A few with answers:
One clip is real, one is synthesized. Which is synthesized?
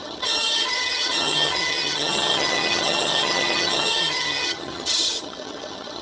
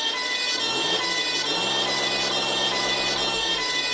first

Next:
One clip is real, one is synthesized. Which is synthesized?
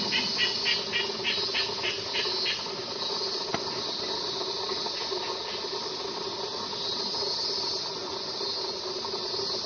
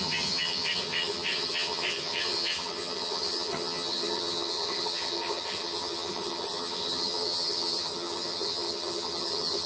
second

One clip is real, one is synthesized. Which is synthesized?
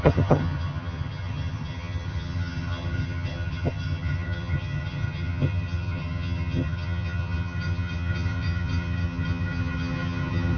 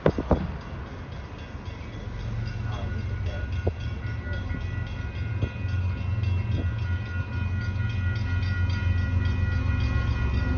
first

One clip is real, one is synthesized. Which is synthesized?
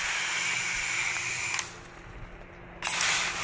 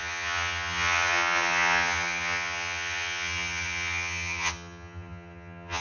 second